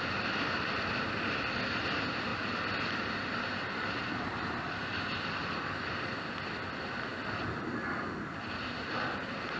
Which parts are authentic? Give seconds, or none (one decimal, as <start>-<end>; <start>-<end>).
0.0-2.3; 6.0-9.6